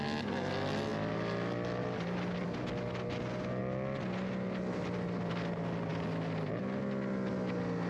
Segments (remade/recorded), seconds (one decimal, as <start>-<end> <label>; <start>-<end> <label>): 0.0-7.9 recorded

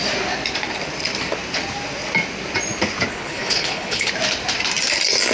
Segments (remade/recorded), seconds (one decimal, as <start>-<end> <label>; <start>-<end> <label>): 0.0-3.1 recorded; 3.1-4.1 remade; 4.1-5.3 recorded

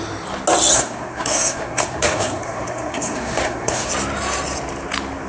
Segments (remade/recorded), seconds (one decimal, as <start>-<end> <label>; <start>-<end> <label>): 0.0-0.7 recorded; 0.7-3.9 remade; 3.9-5.3 recorded

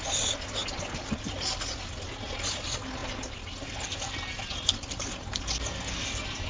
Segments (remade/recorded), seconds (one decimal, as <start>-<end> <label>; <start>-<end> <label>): 0.0-6.5 recorded

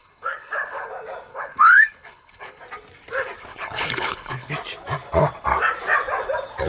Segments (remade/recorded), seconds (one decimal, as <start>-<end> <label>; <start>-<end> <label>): 0.0-0.9 remade; 0.9-1.3 recorded; 1.3-2.6 remade; 2.6-3.5 recorded; 3.5-4.5 remade; 4.5-6.7 recorded

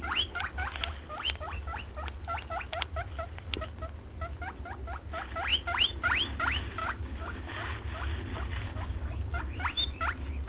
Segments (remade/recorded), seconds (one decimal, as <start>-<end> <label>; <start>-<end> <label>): 0.0-6.8 recorded; 6.8-7.5 remade; 7.5-8.7 recorded; 8.7-9.4 remade; 9.4-10.5 recorded

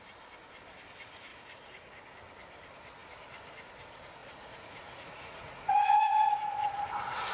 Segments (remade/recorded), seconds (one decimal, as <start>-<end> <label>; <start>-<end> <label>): 0.0-1.3 recorded; 1.3-2.0 remade; 2.0-4.2 recorded; 4.2-6.4 remade; 6.4-7.3 recorded

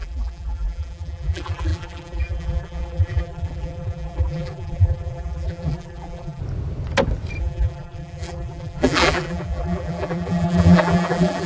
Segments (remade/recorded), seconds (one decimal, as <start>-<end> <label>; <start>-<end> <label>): 0.0-6.4 remade; 6.4-7.4 recorded; 7.4-11.5 remade